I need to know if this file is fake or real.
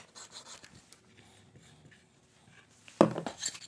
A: real